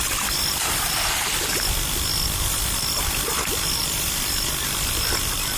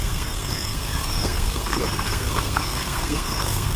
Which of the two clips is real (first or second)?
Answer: first